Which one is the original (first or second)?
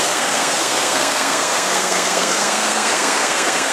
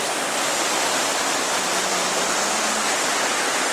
second